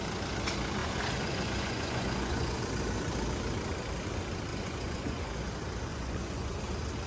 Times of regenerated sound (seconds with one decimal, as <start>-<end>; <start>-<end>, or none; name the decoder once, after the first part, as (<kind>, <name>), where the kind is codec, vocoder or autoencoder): 0.8-2.6 (vocoder, Vocos); 4.5-5.3; 5.9-6.6